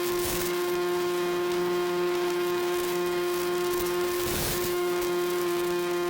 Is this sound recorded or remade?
remade